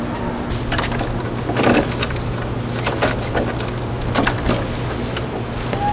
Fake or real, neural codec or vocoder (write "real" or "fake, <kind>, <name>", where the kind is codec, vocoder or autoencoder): real